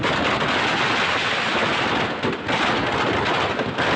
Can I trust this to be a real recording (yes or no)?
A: yes